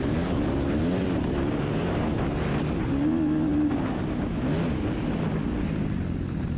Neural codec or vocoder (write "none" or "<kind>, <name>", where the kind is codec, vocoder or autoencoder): none